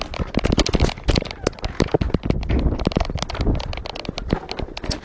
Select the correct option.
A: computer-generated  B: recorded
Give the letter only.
B